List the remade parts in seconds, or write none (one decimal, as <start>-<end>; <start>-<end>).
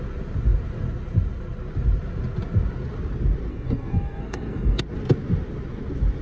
3.5-4.8